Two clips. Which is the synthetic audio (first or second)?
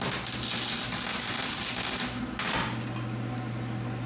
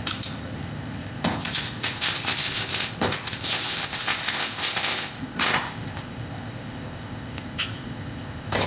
second